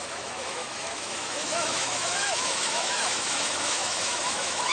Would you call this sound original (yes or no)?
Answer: no